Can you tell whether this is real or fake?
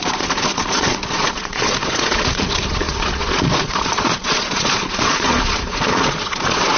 fake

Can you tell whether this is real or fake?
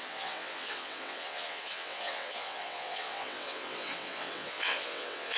fake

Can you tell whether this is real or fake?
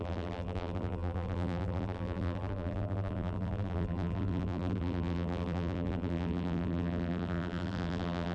fake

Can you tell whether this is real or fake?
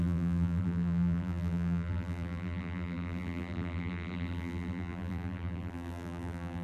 fake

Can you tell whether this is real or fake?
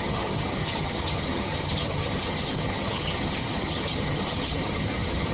fake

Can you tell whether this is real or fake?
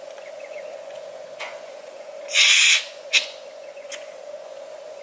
fake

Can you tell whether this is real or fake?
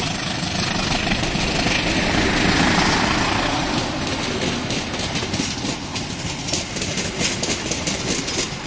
real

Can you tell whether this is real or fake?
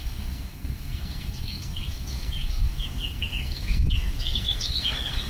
fake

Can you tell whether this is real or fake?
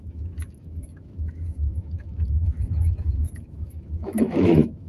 fake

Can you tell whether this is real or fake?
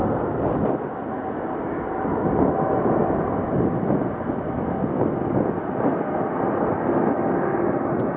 real